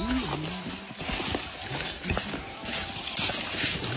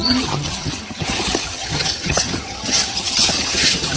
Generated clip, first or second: second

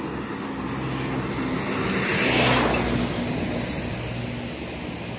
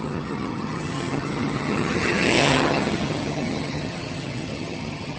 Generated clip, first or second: second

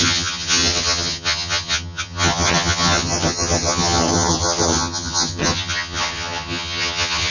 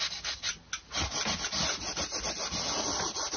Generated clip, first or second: first